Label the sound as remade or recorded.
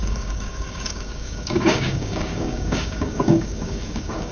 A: remade